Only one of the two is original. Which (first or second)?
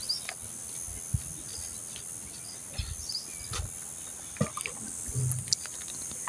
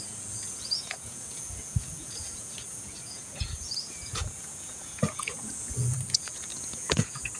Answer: first